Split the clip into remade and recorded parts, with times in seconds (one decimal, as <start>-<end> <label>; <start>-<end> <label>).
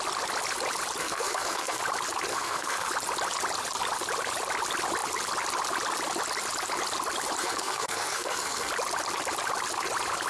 0.0-1.0 recorded; 1.0-1.8 remade; 1.8-2.3 recorded; 2.3-2.9 remade; 2.9-7.4 recorded; 7.4-8.7 remade; 8.7-10.3 recorded